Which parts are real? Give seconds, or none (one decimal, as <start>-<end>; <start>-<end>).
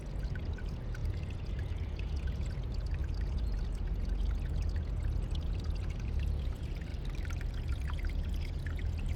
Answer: 6.9-7.5